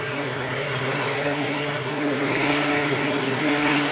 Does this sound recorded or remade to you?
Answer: remade